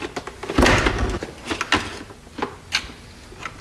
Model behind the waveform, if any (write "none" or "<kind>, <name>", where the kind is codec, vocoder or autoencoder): none